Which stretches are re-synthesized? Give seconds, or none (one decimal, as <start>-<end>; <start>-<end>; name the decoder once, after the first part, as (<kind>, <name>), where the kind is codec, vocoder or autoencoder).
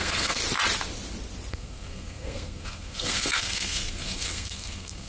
0.0-0.4 (codec, SNAC); 1.5-5.1